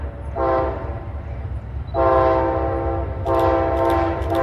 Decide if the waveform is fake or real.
real